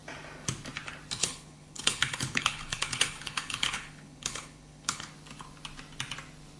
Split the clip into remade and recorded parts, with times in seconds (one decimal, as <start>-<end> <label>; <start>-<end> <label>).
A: 0.0-1.2 recorded; 1.2-5.1 remade; 5.1-6.6 recorded